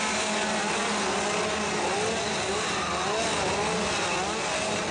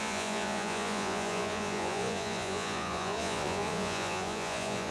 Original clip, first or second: first